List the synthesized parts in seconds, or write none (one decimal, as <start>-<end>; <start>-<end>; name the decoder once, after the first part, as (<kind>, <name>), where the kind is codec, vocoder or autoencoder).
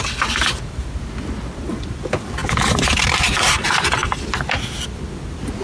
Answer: none